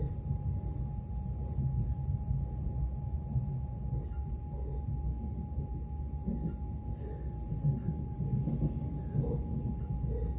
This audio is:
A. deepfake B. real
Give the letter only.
B